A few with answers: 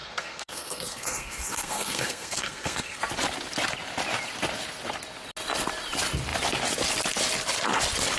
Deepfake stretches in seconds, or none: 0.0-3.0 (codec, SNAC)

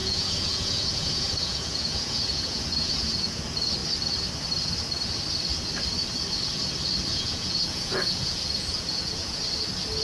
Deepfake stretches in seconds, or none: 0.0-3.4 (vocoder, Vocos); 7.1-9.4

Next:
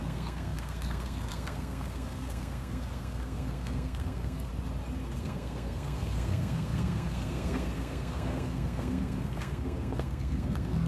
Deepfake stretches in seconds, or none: 0.0-4.5 (codec, SNAC); 5.2-10.9